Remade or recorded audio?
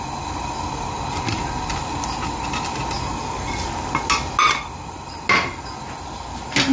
recorded